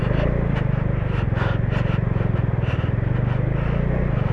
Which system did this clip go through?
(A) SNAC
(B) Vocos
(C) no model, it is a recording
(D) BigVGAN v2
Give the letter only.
C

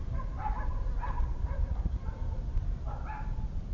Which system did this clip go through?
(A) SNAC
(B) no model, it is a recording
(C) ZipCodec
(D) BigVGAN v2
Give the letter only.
D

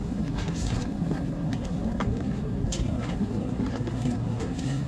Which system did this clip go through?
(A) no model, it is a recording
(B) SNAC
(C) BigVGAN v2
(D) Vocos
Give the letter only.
B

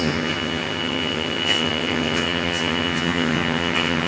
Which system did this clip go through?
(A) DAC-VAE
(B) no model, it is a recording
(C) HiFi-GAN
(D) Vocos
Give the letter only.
C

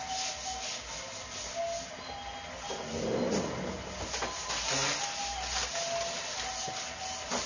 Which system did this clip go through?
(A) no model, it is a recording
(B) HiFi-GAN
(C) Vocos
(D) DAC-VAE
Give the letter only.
A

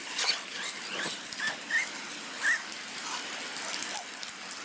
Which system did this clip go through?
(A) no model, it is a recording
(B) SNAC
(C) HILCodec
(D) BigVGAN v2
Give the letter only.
A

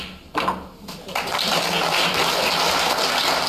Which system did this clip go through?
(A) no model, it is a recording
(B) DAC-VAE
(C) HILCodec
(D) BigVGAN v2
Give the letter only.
A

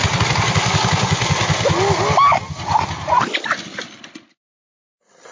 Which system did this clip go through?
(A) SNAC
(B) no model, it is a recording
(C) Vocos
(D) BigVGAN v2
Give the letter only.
B